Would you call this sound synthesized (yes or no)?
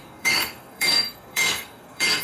yes